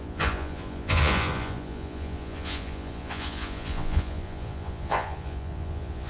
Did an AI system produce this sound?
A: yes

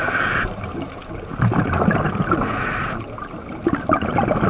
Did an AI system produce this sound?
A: no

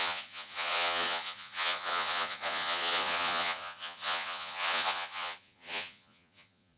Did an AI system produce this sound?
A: yes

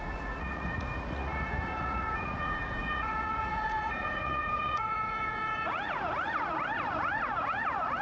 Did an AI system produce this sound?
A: yes